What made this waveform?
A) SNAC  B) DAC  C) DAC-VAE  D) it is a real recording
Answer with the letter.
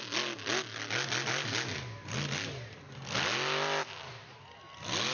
D